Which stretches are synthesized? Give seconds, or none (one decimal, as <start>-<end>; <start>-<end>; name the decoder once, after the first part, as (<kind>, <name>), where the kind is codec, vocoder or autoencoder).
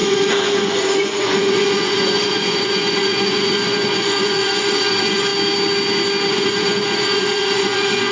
0.0-5.3 (vocoder, Vocos); 6.3-8.1